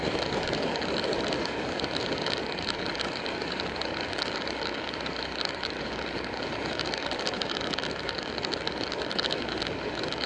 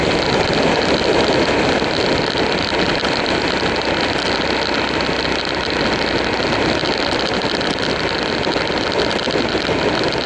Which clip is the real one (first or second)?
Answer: second